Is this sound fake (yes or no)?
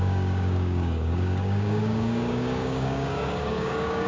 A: yes